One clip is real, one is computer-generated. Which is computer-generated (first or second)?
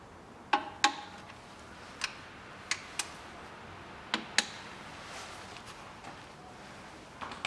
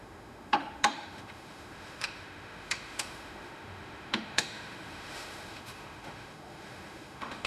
second